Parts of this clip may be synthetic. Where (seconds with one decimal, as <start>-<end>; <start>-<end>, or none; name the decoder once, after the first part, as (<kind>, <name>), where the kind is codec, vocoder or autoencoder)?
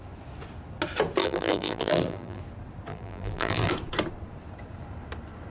1.2-2.4 (vocoder, BigVGAN v2); 2.9-3.7